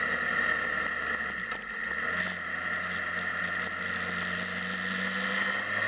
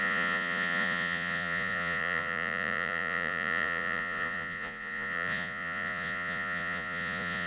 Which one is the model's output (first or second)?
second